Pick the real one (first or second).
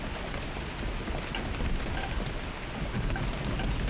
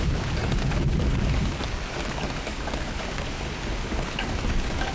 first